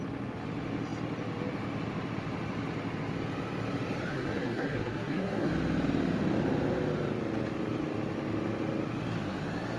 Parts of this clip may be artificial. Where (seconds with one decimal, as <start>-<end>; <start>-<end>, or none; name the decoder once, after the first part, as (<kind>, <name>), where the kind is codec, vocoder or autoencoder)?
4.1-5.5 (codec, SNAC)